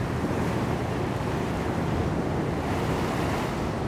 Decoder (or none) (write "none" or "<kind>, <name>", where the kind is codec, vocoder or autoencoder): vocoder, BigVGAN v2